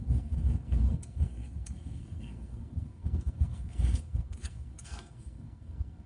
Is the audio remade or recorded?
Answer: remade